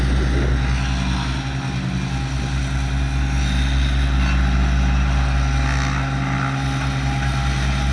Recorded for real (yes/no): yes